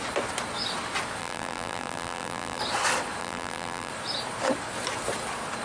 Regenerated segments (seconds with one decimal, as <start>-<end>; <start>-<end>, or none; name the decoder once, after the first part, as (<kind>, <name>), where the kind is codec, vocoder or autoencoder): 1.2-2.6 (vocoder, BigVGAN v2); 3.2-3.9